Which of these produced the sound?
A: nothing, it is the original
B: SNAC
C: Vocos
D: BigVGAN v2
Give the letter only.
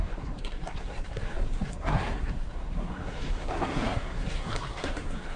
B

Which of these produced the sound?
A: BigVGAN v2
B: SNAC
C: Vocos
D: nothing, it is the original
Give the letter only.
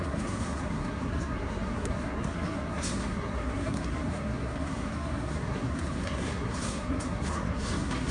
B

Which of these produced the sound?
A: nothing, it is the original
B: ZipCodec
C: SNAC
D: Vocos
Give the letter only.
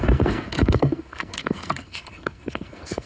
C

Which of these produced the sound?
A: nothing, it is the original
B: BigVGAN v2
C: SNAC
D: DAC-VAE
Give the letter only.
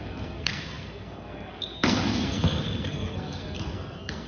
C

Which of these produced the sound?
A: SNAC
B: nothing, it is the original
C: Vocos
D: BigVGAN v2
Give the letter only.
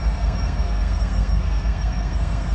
A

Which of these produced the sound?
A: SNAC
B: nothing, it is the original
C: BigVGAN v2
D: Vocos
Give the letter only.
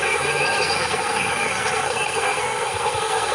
A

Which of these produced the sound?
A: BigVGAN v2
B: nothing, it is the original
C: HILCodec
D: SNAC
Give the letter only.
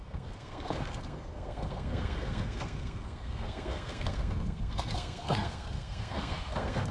D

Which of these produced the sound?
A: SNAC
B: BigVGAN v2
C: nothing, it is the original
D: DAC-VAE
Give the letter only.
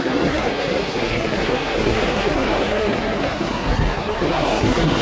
A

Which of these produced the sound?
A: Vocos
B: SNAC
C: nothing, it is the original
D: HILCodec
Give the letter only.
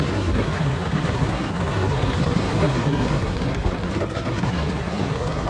B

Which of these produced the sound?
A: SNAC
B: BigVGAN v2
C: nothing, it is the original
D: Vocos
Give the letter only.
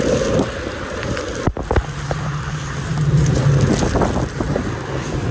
C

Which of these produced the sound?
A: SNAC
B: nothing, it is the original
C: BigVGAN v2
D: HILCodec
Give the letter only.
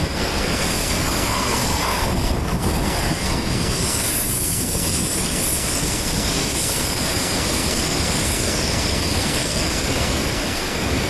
A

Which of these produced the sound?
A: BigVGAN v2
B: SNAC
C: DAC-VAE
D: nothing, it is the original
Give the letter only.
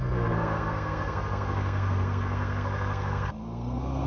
B